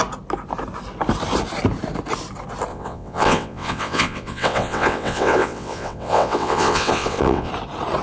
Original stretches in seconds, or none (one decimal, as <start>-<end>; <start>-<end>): 0.0-2.7; 7.5-8.0